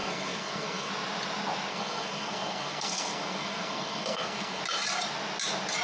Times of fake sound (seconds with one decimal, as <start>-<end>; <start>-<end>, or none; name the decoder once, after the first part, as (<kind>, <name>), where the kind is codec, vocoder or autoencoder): 0.0-0.9 (codec, SNAC); 1.7-4.6